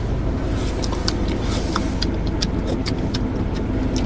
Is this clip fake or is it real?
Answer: real